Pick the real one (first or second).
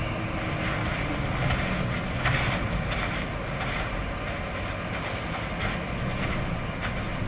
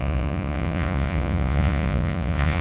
first